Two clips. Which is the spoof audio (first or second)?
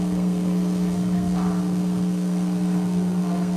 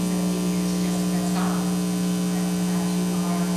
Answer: first